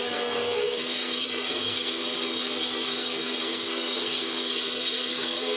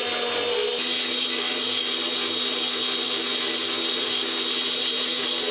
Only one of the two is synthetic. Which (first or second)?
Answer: first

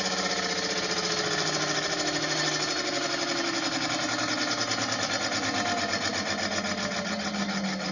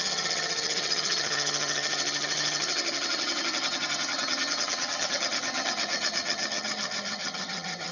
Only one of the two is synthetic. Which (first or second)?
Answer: second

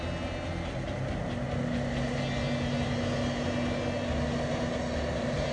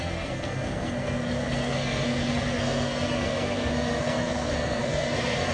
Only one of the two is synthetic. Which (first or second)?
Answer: second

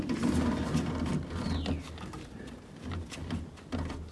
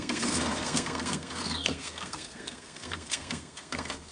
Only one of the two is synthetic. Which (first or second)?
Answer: second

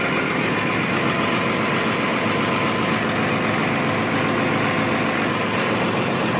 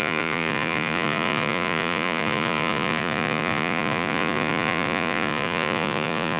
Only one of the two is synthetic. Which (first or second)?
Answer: second